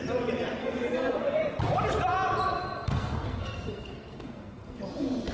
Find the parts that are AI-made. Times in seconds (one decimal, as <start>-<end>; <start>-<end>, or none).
0.6-1.4; 2.6-4.8